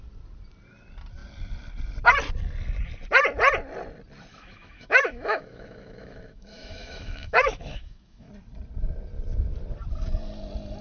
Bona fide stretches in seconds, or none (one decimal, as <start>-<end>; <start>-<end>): 0.0-4.3; 8.3-10.8